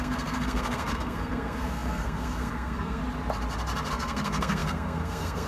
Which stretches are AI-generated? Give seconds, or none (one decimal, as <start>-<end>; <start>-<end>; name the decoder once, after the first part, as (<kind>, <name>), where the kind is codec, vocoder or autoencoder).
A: 0.0-3.0 (codec, SNAC); 3.9-5.5

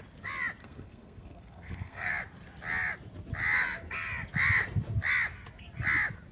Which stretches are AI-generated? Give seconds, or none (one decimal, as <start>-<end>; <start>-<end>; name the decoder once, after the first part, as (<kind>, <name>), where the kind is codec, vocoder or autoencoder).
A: 0.6-2.1 (codec, SNAC)

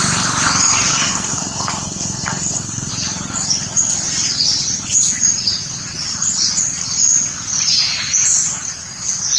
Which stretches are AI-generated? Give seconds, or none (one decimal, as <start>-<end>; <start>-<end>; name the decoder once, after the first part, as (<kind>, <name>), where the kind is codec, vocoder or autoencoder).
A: 0.9-2.9 (codec, SNAC)

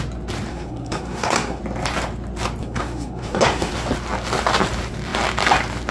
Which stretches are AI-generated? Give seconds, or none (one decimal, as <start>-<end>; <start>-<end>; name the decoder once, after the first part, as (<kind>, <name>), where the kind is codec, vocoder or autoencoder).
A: 0.5-1.6 (codec, SNAC); 2.6-3.7

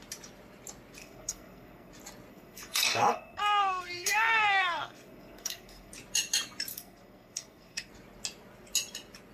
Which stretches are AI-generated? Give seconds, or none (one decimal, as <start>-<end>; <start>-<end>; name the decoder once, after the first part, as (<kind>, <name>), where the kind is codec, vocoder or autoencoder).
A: 1.0-1.9 (codec, SNAC); 2.3-5.9; 6.7-7.9

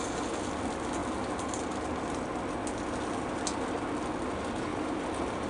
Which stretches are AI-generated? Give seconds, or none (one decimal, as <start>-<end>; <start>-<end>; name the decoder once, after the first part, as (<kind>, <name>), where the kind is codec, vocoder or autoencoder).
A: none

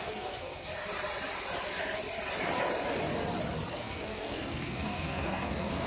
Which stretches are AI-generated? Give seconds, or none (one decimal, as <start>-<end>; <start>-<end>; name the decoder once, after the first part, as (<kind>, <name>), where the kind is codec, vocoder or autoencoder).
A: 0.0-0.7 (codec, SNAC); 3.7-5.9

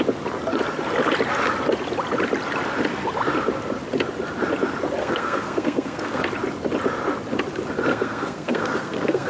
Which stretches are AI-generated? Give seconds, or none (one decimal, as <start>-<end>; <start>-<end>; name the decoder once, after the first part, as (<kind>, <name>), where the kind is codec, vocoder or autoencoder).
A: 5.0-6.2 (codec, SNAC); 7.9-9.3